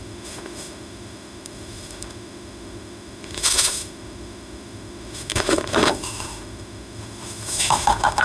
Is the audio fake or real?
fake